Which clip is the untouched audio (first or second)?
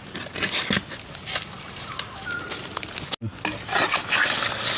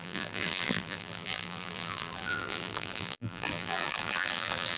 first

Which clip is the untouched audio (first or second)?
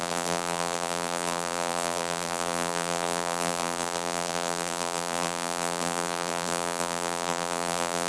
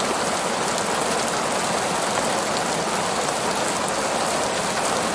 second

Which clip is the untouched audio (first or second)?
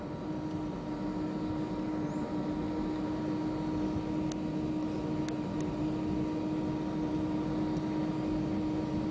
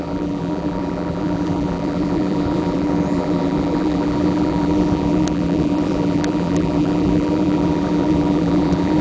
first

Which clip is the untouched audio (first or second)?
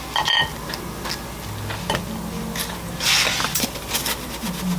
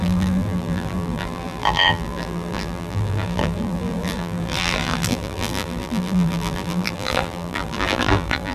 first